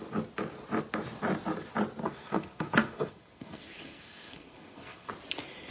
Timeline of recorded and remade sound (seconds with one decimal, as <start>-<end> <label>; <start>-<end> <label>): 0.0-2.0 recorded; 2.0-5.1 remade; 5.1-5.7 recorded